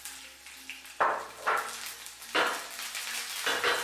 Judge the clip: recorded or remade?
recorded